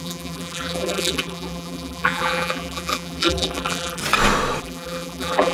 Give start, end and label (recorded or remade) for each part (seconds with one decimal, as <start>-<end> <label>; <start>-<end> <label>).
0.0-4.0 remade; 4.0-4.6 recorded; 4.6-5.5 remade